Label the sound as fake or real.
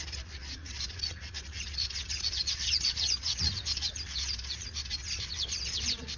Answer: fake